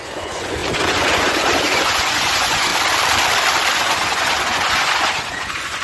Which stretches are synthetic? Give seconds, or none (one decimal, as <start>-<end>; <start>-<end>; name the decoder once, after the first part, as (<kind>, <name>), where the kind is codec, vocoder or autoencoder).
0.0-2.7 (vocoder, Vocos); 3.7-5.8